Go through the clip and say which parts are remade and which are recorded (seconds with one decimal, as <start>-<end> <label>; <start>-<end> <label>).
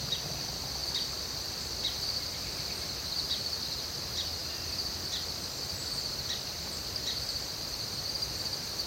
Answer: 0.0-8.9 recorded